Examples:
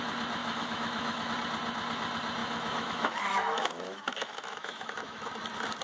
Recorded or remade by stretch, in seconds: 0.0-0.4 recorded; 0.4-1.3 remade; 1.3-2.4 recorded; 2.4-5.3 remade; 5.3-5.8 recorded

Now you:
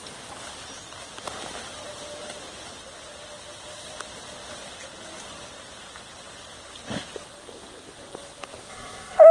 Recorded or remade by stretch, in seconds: 0.0-8.7 recorded; 8.7-9.3 remade

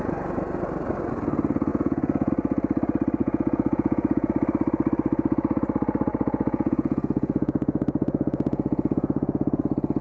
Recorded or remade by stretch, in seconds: 0.0-1.7 recorded; 1.7-2.3 remade; 2.3-3.2 recorded; 3.2-4.3 remade; 4.3-6.1 recorded; 6.1-9.6 remade; 9.6-10.0 recorded